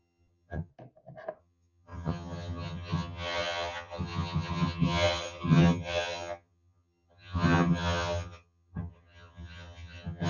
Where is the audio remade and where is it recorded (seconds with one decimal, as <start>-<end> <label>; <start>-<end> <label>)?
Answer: 0.0-0.7 remade; 0.7-1.4 recorded; 1.4-10.3 remade